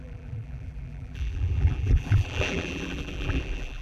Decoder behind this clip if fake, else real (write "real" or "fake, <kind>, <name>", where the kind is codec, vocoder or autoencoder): fake, vocoder, BigVGAN v2